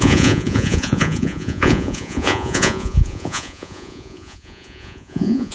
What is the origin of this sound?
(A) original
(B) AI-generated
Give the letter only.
B